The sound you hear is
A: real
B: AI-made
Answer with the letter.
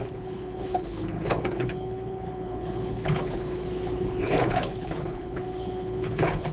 B